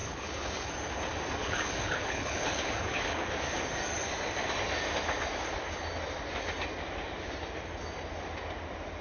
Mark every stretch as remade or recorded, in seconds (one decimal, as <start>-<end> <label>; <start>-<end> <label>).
0.0-0.7 remade; 0.7-1.4 recorded; 1.4-3.3 remade; 3.3-9.0 recorded